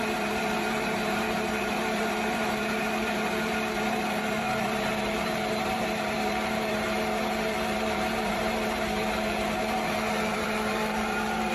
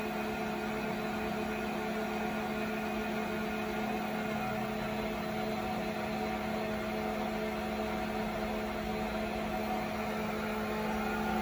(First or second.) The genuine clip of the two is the second